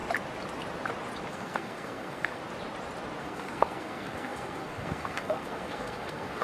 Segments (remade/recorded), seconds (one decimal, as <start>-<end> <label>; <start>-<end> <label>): 0.0-1.3 recorded; 1.3-2.4 remade; 2.4-3.2 recorded; 3.2-6.4 remade